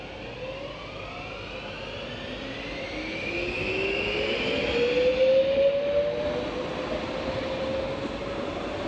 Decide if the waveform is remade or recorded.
recorded